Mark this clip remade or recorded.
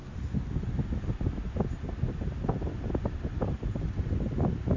recorded